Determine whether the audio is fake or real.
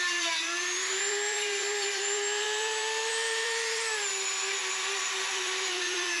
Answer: fake